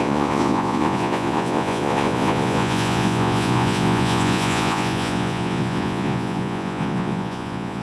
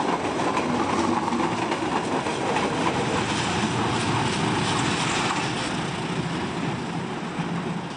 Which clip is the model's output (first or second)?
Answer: first